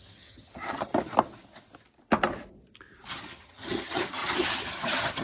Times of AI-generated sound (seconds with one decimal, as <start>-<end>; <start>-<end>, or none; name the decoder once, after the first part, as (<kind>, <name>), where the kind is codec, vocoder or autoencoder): 0.0-0.9 (vocoder, HiFi-GAN); 3.1-5.2